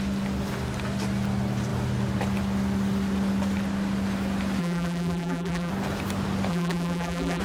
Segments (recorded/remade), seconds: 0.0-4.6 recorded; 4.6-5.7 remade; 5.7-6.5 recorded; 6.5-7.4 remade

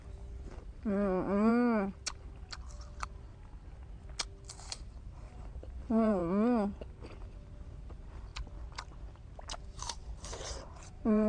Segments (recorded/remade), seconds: 0.0-1.5 remade; 1.5-4.7 recorded; 4.7-6.2 remade; 6.2-7.3 recorded; 7.3-8.3 remade; 8.3-9.2 recorded; 9.2-11.3 remade

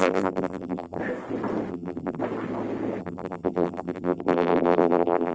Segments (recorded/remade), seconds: 0.0-1.0 remade; 1.0-1.7 recorded; 1.7-2.2 remade; 2.2-3.0 recorded; 3.0-5.3 remade

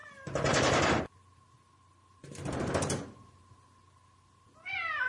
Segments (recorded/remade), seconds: 0.0-1.0 remade; 1.0-2.2 recorded; 2.2-3.3 remade; 3.3-5.1 recorded

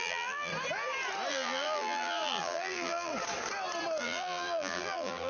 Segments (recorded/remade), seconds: 0.0-0.5 remade; 0.5-1.3 recorded; 1.3-3.1 remade; 3.1-4.0 recorded; 4.0-5.3 remade

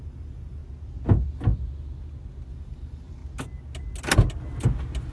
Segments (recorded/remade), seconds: 0.0-0.6 remade; 0.6-2.5 recorded; 2.5-3.2 remade; 3.2-5.1 recorded

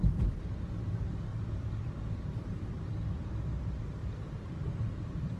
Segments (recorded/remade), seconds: 0.0-0.6 remade; 0.6-1.3 recorded; 1.3-3.2 remade; 3.2-4.0 recorded; 4.0-4.9 remade; 4.9-5.4 recorded